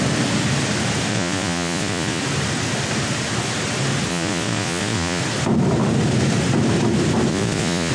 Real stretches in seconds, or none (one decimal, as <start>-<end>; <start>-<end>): 0.0-1.1; 2.2-4.1; 5.2-7.3